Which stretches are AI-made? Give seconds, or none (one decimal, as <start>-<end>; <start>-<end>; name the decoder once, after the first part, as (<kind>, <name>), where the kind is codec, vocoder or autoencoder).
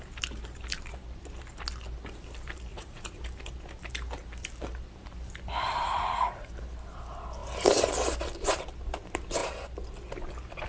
2.7-3.2 (vocoder, Vocos); 5.9-6.5